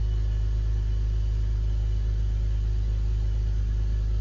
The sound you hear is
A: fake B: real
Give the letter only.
B